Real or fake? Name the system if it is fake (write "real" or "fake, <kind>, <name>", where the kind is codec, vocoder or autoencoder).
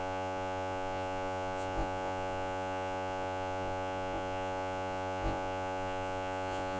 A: fake, vocoder, Vocos